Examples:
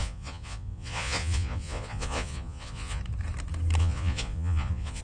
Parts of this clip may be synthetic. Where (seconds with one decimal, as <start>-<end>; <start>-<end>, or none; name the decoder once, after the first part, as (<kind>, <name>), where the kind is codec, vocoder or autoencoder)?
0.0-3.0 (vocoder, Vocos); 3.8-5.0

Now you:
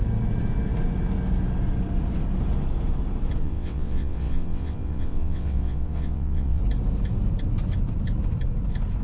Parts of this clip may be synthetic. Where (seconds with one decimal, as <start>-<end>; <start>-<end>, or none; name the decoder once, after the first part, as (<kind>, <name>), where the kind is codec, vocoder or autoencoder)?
3.4-6.6 (vocoder, WaveNeXt)

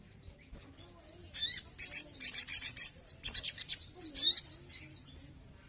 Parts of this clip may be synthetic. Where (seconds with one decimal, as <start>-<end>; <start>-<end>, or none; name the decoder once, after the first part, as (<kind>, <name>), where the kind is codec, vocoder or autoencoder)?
2.5-3.7 (vocoder, BigVGAN v2)

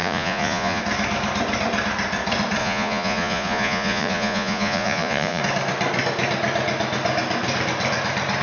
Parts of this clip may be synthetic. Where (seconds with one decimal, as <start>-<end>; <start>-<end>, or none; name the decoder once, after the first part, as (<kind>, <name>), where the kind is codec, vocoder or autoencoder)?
0.0-0.8 (vocoder, Vocos); 2.6-5.4

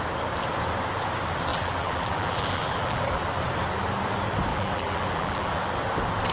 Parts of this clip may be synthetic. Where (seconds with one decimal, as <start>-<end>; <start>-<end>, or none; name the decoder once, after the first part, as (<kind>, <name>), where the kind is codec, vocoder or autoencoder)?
1.5-3.2 (vocoder, BigVGAN v2); 4.5-5.6

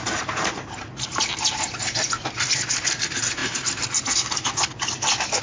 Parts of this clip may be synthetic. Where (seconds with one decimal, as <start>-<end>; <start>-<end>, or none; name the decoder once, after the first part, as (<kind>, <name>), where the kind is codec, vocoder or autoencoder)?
none

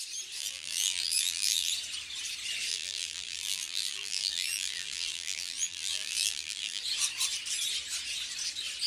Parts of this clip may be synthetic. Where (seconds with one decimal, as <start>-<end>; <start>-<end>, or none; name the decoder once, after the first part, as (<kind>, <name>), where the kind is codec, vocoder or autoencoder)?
0.4-1.7 (vocoder, BigVGAN v2); 2.7-6.8